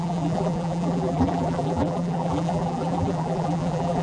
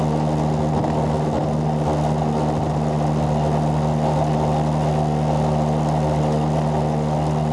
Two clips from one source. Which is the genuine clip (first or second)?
second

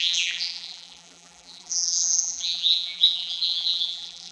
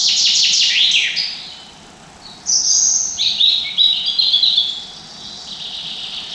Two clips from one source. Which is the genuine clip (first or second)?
second